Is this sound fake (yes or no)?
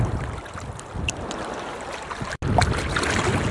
no